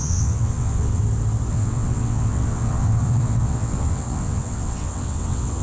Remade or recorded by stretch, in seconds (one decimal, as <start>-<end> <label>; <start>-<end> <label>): 0.0-1.0 remade; 1.0-1.5 recorded; 1.5-5.6 remade